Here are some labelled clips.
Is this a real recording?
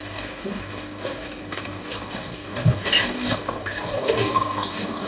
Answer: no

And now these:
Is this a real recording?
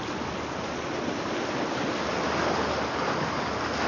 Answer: yes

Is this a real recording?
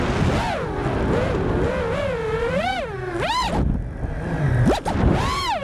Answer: yes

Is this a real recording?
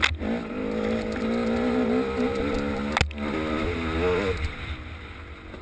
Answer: yes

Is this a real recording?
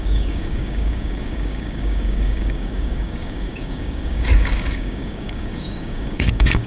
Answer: no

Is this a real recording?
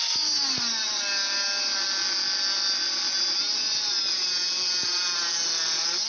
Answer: yes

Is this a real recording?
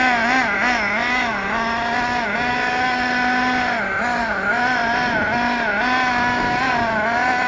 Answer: yes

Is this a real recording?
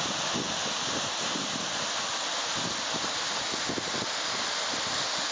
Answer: yes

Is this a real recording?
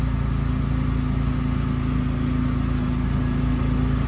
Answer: yes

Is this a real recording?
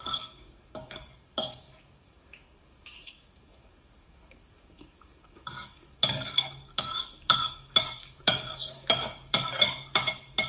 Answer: no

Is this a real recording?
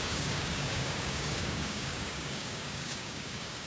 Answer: no